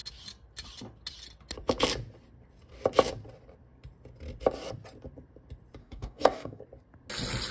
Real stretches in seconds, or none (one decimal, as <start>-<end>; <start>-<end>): 0.0-5.8; 6.6-7.5